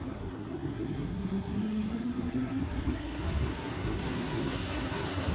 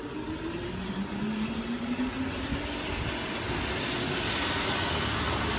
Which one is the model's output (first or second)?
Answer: first